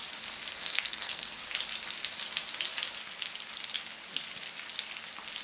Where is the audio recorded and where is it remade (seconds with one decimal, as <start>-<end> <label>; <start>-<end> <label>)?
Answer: 0.0-0.5 recorded; 0.5-1.4 remade; 1.4-5.4 recorded